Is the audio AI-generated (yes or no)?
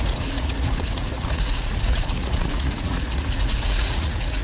yes